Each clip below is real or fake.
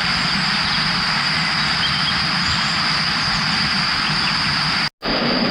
real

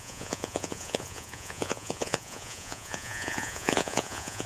fake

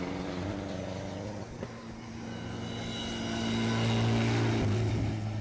real